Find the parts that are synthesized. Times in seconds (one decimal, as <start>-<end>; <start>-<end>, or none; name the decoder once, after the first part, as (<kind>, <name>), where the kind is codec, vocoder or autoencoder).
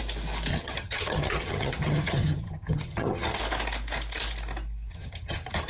0.5-3.4 (vocoder, HiFi-GAN); 4.9-5.7